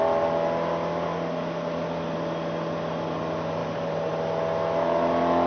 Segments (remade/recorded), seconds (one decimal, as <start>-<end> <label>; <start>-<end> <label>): 0.0-3.6 recorded; 3.6-4.1 remade; 4.1-5.5 recorded